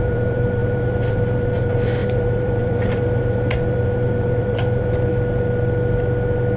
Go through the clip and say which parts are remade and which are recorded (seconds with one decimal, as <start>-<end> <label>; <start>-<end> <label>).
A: 0.0-5.1 remade; 5.1-6.6 recorded